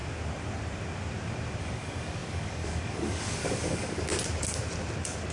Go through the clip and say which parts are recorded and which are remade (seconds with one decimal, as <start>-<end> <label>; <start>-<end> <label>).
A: 0.0-1.6 recorded; 1.6-4.1 remade; 4.1-5.3 recorded